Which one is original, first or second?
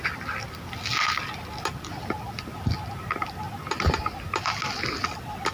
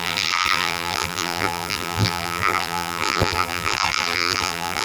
first